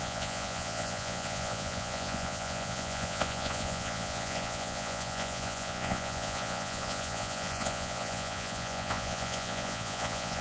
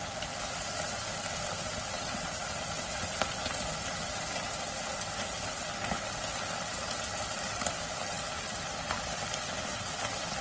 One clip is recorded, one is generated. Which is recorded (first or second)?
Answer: second